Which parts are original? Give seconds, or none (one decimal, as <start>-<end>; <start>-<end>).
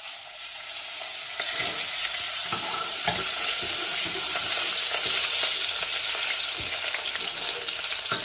0.0-3.9; 4.6-8.2